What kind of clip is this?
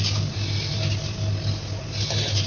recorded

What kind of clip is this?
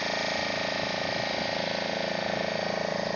recorded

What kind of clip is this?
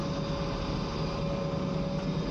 recorded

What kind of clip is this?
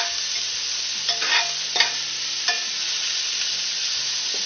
recorded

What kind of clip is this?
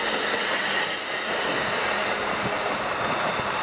recorded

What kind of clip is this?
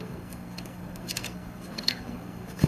remade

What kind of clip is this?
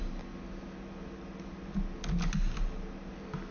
recorded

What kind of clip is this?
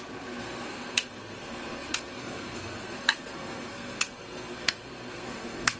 remade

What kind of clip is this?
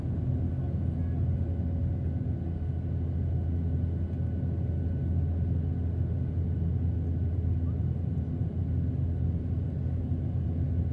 recorded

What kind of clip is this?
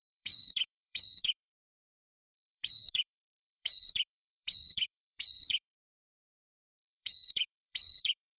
remade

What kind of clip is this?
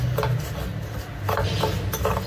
recorded